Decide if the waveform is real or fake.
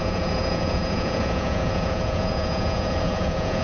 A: fake